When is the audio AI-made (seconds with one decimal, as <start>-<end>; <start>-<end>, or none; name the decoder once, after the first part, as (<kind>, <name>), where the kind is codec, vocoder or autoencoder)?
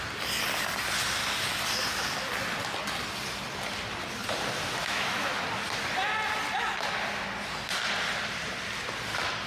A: 4.8-5.3 (autoencoder, DAC-VAE)